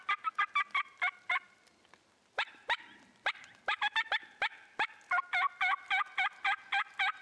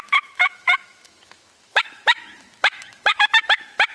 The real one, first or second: first